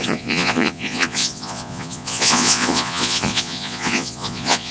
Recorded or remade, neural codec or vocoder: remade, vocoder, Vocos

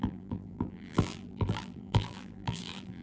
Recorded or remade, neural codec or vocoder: remade, vocoder, BigVGAN v2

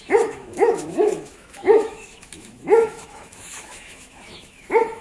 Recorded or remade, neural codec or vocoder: remade, autoencoder, DAC-VAE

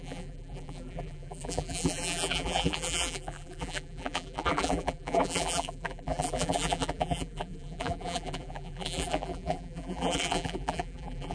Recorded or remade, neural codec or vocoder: remade, vocoder, BigVGAN v2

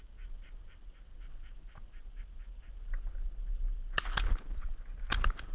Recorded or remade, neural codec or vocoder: recorded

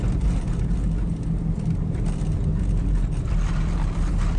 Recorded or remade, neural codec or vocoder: recorded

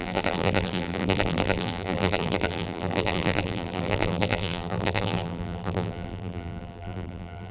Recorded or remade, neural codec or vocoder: remade, vocoder, BigVGAN v2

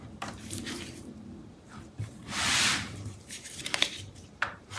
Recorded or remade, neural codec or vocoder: remade, vocoder, BigVGAN v2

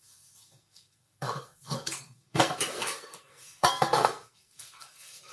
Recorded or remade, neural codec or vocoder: remade, codec, SNAC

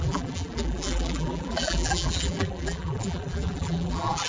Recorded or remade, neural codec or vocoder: remade, vocoder, BigVGAN v2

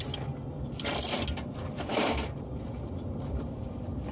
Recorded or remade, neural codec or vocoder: remade, vocoder, BigVGAN v2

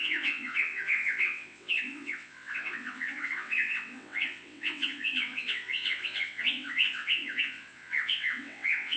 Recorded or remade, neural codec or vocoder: remade, vocoder, WaveNeXt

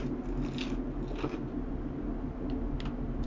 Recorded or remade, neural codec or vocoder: recorded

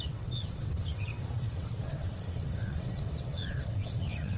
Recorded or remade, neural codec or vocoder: remade, vocoder, WaveNeXt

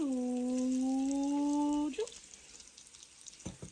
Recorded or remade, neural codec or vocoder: recorded